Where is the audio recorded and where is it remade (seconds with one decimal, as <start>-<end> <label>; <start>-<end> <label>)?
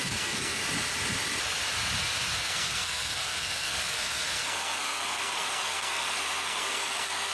0.0-0.6 remade; 0.6-2.4 recorded; 2.4-7.3 remade